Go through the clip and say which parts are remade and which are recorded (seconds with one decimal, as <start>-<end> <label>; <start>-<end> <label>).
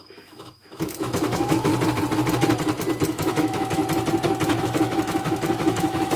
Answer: 0.0-1.7 remade; 1.7-3.1 recorded; 3.1-3.8 remade; 3.8-4.6 recorded; 4.6-6.2 remade